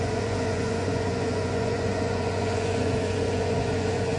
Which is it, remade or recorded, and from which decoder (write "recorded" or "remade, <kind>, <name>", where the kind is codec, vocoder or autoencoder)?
remade, vocoder, Vocos